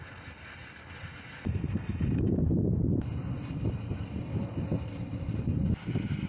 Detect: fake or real real